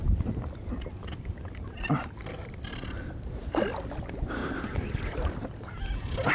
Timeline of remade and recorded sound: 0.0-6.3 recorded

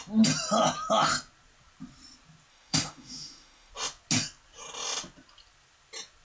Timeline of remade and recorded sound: 0.0-2.5 recorded; 2.5-3.7 remade; 3.7-6.2 recorded

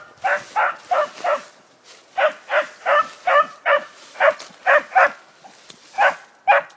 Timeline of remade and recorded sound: 0.0-3.5 recorded; 3.5-4.3 remade; 4.3-6.8 recorded

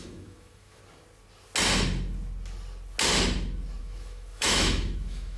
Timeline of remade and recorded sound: 0.0-0.8 remade; 0.8-3.8 recorded; 3.8-5.4 remade

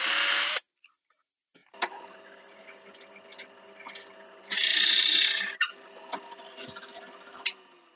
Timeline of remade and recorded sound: 0.0-8.0 recorded

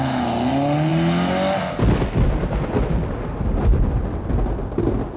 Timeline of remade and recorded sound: 0.0-5.2 recorded